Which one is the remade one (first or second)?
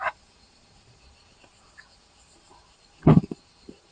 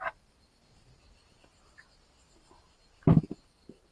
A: first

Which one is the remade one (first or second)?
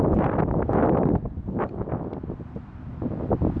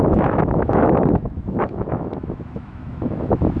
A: second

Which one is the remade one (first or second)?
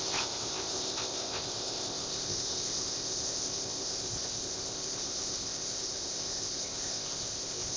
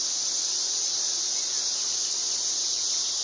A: first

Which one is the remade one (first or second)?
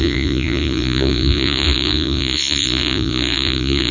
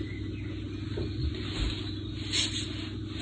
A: first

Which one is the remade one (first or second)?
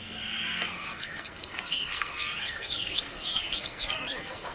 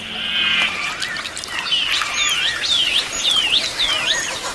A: first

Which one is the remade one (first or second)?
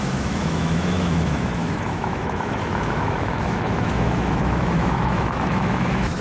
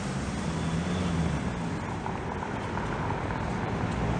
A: first